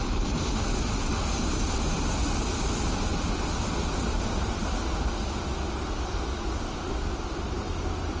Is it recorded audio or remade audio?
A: recorded